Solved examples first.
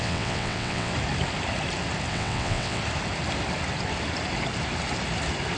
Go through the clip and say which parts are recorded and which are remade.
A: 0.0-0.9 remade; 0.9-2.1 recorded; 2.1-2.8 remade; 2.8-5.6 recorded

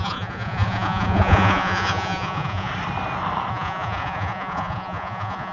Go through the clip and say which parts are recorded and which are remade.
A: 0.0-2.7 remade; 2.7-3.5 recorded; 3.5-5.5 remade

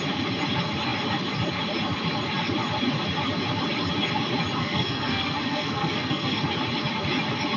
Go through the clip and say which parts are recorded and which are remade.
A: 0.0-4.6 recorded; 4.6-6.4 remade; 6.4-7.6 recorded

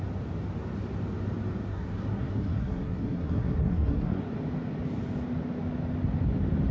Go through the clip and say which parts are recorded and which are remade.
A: 0.0-1.7 recorded; 1.7-4.2 remade; 4.2-6.7 recorded

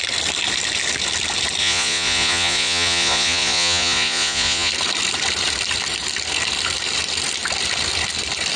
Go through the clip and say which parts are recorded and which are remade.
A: 0.0-1.6 recorded; 1.6-4.7 remade; 4.7-8.6 recorded

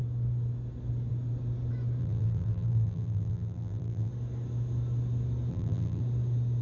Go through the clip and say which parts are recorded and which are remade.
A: 0.0-2.0 recorded; 2.0-4.1 remade; 4.1-5.5 recorded; 5.5-6.0 remade; 6.0-6.6 recorded

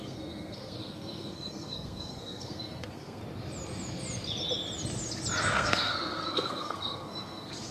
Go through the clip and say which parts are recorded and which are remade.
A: 0.0-3.2 remade; 3.2-5.4 recorded; 5.4-7.7 remade

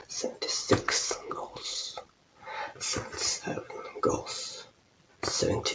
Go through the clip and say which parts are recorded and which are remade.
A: 0.0-0.8 recorded; 0.8-1.9 remade; 1.9-5.7 recorded